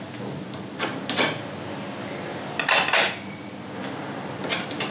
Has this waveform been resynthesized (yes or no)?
no